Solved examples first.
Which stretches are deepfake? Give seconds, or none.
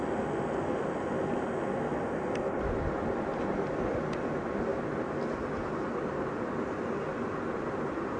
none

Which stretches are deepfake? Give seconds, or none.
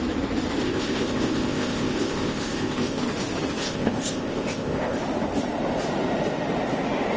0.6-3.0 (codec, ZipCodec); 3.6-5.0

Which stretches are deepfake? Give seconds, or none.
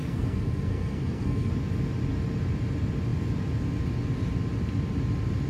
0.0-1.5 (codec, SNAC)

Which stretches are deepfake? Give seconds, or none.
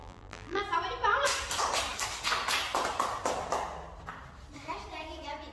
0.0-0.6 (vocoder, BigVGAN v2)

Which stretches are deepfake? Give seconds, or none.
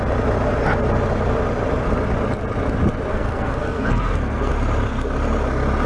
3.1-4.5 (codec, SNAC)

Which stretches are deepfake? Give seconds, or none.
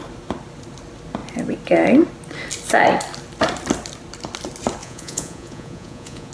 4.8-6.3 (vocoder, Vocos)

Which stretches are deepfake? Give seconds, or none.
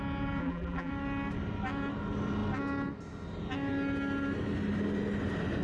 0.4-0.9 (vocoder, BigVGAN v2)